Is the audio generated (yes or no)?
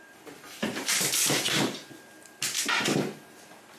yes